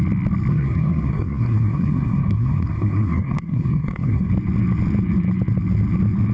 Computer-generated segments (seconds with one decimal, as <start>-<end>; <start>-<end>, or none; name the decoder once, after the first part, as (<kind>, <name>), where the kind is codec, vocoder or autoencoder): 0.5-4.3 (codec, SNAC)